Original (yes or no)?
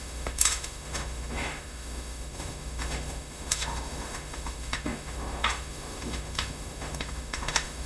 no